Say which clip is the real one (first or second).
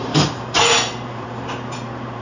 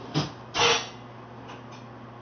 second